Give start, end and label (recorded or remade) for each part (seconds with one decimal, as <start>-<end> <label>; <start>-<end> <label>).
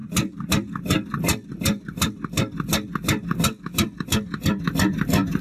0.0-0.5 remade; 0.5-5.4 recorded